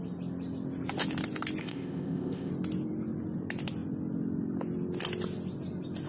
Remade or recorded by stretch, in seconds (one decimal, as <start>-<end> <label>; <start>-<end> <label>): 0.0-1.6 recorded; 1.6-2.5 remade; 2.5-6.1 recorded